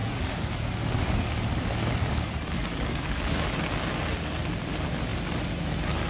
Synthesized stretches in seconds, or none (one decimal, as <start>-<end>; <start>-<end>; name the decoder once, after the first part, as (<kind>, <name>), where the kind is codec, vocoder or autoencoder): 0.0-3.7 (codec, DAC)

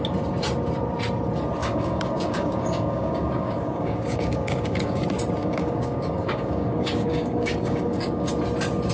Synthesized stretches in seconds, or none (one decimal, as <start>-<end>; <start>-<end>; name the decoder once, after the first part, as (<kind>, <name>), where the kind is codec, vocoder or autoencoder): 1.6-5.0 (codec, DAC); 5.4-8.3

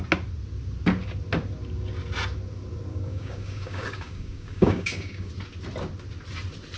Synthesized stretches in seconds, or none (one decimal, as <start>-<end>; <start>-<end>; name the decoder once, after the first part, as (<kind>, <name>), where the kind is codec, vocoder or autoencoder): 2.9-5.3 (codec, DAC)